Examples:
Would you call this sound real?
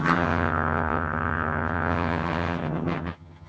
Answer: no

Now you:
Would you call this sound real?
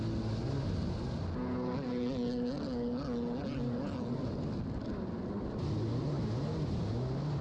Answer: yes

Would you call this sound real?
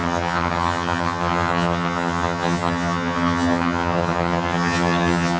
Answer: no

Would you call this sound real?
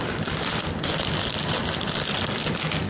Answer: yes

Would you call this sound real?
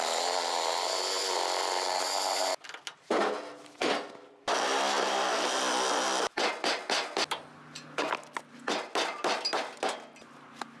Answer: yes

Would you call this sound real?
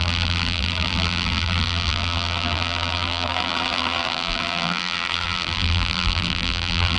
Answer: no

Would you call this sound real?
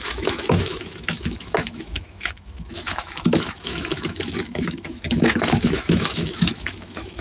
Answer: no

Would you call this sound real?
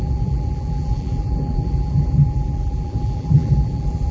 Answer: no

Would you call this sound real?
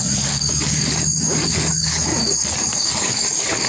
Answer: no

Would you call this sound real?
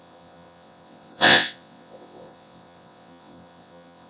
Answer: no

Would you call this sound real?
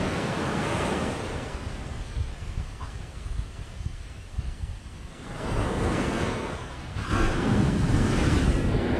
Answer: no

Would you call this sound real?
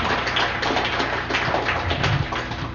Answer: yes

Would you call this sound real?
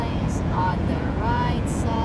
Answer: no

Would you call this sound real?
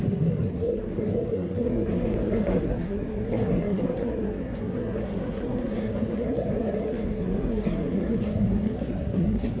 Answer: no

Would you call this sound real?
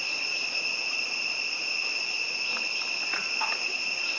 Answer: yes